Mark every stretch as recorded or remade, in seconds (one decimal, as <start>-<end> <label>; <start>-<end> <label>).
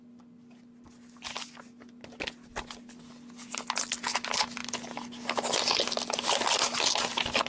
0.0-7.5 recorded